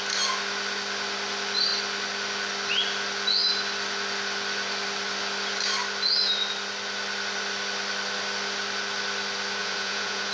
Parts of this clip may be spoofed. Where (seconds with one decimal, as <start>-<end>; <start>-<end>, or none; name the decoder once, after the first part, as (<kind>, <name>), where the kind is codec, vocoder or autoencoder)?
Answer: 9.6-10.3 (vocoder, Vocos)